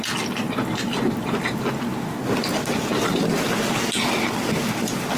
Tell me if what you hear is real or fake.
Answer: real